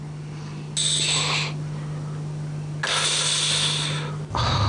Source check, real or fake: real